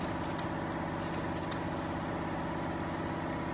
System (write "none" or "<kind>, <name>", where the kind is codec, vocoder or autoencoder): none